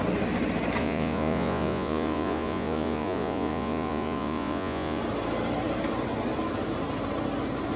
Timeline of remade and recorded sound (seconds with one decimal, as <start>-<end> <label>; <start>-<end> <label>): 0.0-0.8 recorded; 0.8-5.0 remade; 5.0-7.8 recorded